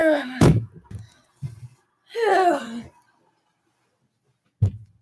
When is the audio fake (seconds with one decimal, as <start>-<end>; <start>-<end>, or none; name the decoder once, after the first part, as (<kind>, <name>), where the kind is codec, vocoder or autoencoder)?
0.0-0.7 (autoencoder, DAC-VAE)